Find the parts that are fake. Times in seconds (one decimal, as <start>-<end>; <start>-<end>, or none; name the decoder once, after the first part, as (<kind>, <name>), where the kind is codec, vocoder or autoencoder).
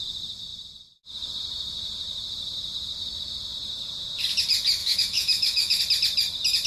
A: 4.8-5.8 (autoencoder, DAC-VAE)